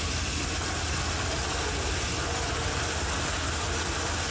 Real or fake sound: real